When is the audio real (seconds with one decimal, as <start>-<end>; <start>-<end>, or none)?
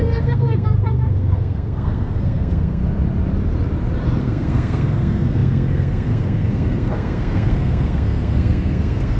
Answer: 2.8-4.2